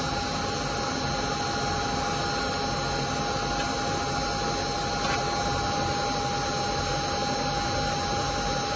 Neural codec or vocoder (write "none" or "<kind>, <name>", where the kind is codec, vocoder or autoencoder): none